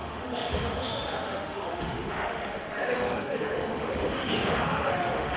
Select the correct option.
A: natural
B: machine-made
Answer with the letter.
B